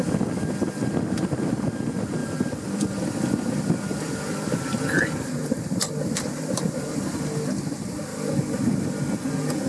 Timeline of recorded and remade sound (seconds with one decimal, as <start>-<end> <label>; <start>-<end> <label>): 0.0-2.2 recorded; 2.2-7.2 remade; 7.2-9.7 recorded